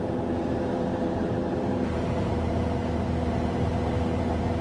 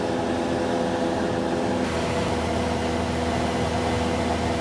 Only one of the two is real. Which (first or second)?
second